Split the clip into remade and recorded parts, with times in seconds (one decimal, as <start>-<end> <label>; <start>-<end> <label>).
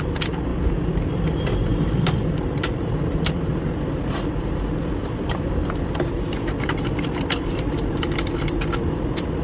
0.0-0.5 recorded; 0.5-1.1 remade; 1.1-9.4 recorded